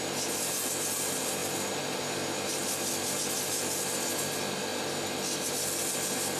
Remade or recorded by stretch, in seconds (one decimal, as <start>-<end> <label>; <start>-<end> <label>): 0.0-6.4 recorded